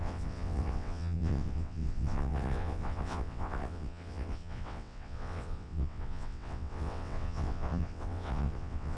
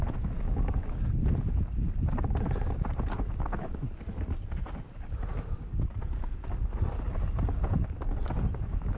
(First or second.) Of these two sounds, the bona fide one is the second